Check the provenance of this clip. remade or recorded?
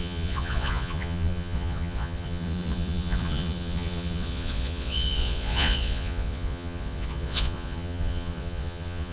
remade